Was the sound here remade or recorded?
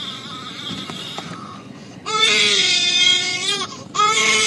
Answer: remade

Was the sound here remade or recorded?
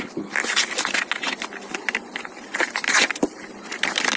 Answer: recorded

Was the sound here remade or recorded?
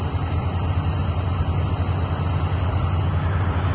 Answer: recorded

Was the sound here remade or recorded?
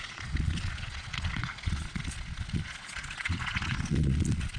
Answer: remade